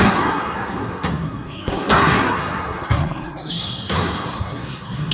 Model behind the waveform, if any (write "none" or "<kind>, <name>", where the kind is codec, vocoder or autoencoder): codec, SNAC